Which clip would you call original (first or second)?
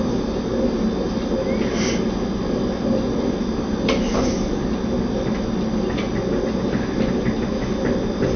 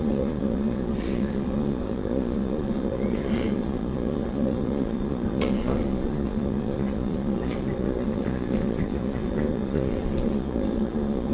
first